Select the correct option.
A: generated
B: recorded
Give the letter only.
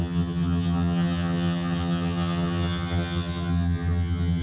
A